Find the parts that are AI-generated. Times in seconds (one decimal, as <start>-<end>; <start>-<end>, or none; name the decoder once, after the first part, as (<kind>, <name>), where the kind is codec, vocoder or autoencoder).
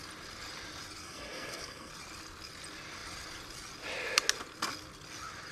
1.0-1.9 (codec, SNAC)